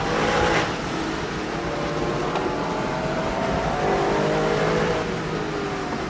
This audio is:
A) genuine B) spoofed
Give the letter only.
A